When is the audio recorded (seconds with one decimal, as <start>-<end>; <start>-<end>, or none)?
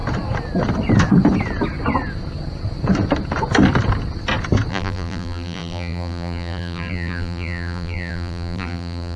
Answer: 0.0-4.7